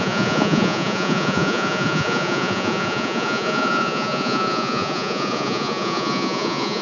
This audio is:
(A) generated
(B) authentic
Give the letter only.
A